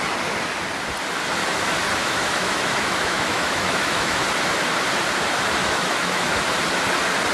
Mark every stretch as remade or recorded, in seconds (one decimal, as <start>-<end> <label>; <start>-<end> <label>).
0.0-2.0 recorded; 2.0-4.2 remade; 4.2-5.6 recorded; 5.6-6.4 remade; 6.4-7.3 recorded